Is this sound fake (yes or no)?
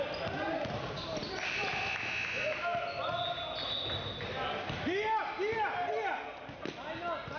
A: no